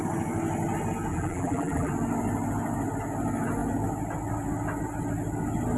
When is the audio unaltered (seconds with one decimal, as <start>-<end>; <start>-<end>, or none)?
0.0-1.1; 1.9-5.8